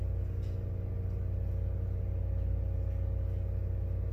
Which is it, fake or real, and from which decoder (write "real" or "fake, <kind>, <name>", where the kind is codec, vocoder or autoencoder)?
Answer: real